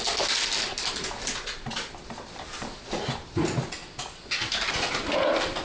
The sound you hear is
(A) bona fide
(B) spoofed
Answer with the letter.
A